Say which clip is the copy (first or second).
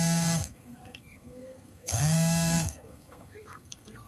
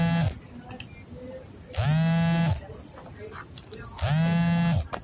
first